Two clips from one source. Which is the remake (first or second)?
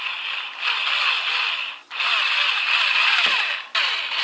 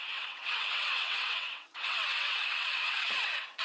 second